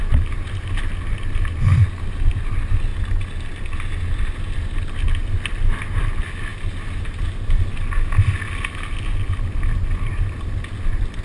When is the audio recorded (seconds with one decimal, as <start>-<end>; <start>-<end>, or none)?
0.0-11.2